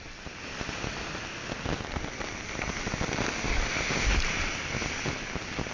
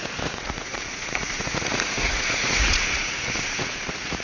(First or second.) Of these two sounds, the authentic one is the first